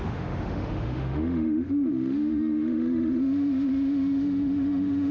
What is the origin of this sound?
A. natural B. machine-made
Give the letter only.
B